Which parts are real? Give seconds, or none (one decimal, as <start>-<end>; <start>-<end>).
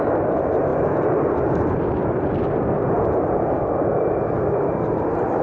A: 0.0-5.4